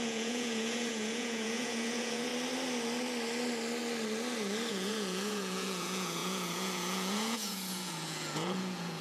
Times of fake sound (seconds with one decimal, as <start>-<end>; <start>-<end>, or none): 0.0-2.3; 4.7-9.0